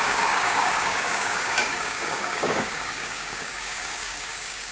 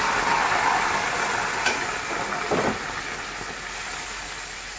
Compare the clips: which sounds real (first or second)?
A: second